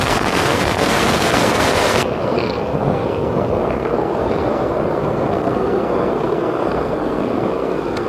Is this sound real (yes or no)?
no